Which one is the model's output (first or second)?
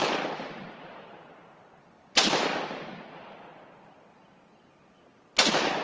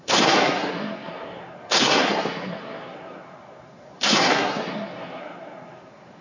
second